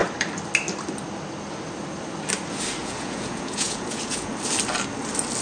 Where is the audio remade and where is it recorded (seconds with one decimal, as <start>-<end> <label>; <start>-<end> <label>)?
0.0-2.8 recorded; 2.8-4.3 remade; 4.3-5.4 recorded